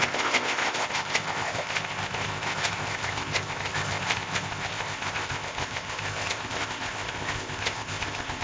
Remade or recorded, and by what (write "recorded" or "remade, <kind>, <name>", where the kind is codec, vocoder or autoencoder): remade, codec, ZipCodec